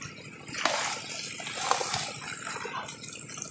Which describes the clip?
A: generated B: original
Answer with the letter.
B